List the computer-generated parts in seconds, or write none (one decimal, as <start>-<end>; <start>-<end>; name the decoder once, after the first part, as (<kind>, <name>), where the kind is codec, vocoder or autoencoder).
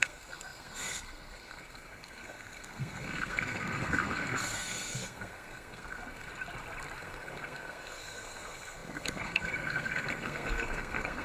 0.0-6.3 (codec, SNAC); 7.0-11.2